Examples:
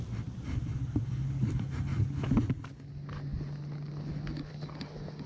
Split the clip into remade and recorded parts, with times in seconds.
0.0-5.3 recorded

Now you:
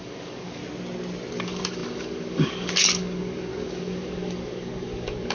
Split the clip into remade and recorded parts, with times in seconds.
0.0-0.6 remade; 0.6-1.3 recorded; 1.3-5.3 remade

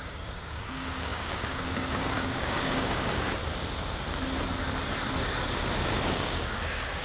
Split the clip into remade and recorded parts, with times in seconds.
0.0-3.4 remade; 3.4-6.1 recorded; 6.1-7.0 remade

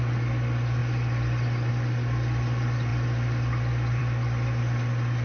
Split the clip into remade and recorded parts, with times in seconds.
0.0-5.2 recorded